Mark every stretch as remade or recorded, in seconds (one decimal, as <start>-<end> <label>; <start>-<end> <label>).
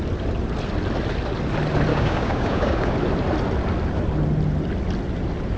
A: 0.0-1.9 recorded; 1.9-2.9 remade; 2.9-5.6 recorded